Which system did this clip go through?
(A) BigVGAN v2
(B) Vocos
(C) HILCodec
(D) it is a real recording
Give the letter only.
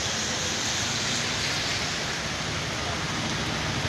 D